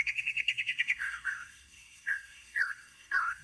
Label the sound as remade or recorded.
remade